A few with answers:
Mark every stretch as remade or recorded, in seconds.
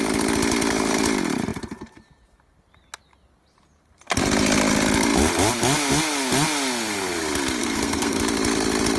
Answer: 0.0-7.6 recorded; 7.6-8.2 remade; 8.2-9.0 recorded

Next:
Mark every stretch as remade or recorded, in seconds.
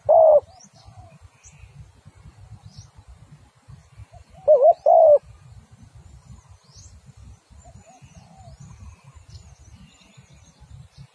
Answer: 0.0-11.1 recorded